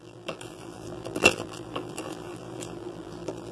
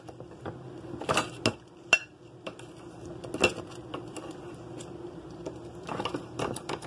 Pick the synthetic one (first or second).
first